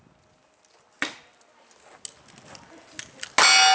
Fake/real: real